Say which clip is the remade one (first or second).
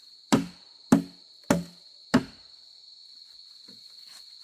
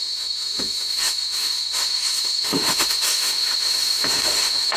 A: second